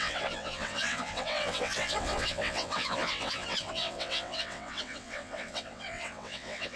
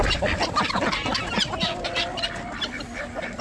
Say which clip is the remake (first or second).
first